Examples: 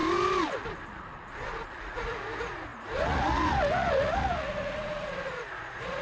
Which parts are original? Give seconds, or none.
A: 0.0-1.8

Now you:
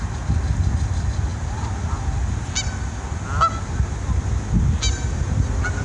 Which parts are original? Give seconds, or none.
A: 0.0-5.8

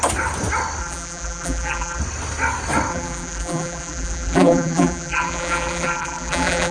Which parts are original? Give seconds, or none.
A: 0.0-0.8; 2.0-2.9

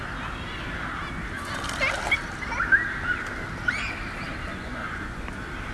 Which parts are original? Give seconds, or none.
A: 0.0-4.5; 5.2-5.7